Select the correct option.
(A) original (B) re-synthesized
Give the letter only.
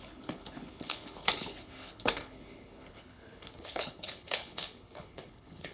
B